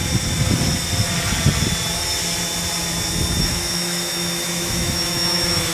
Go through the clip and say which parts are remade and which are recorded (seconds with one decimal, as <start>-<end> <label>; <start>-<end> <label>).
0.0-3.4 recorded; 3.4-5.7 remade